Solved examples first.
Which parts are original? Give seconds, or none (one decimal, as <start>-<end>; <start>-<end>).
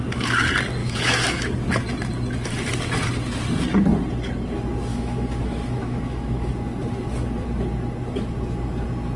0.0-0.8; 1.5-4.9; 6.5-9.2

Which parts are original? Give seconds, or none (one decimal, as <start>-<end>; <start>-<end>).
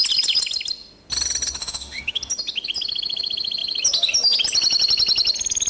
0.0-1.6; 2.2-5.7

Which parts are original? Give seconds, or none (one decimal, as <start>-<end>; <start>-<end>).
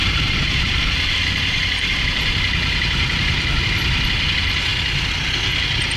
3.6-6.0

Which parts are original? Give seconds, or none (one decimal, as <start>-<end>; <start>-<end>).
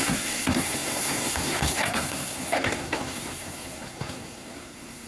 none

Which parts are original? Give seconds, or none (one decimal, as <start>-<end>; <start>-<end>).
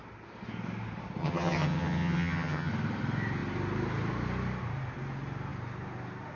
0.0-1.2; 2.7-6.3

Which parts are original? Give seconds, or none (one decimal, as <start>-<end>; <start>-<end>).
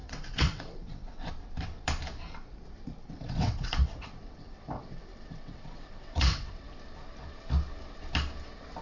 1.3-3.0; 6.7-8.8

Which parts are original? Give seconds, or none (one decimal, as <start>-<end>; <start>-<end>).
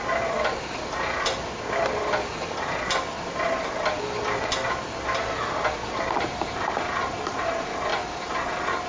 0.0-8.9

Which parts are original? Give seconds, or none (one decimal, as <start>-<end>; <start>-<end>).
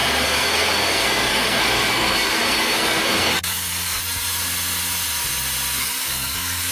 4.0-5.8